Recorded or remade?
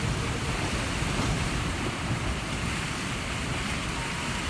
remade